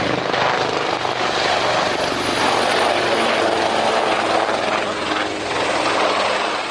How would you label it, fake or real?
real